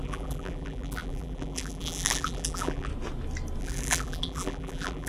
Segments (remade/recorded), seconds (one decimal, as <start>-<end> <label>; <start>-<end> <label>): 0.0-2.9 remade; 2.9-3.6 recorded; 3.6-5.1 remade